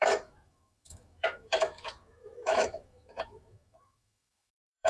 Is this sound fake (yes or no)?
yes